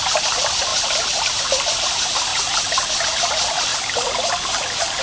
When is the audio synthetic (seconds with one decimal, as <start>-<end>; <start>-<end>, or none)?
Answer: none